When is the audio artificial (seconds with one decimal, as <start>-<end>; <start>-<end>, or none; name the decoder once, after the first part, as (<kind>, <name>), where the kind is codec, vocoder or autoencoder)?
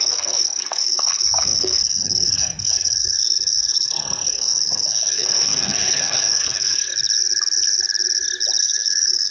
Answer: 0.0-6.9 (codec, SNAC); 8.6-9.3